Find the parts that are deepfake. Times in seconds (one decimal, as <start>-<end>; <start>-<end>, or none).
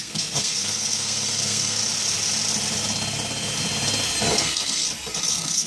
0.0-1.8; 4.3-4.8; 5.3-5.7